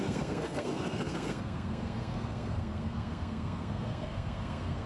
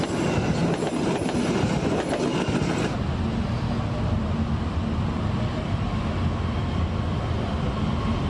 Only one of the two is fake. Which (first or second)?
first